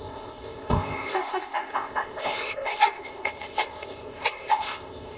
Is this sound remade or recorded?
remade